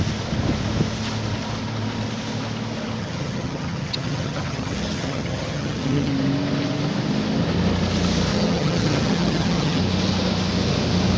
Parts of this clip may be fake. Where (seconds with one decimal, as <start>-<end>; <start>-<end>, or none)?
3.0-6.1; 8.3-9.8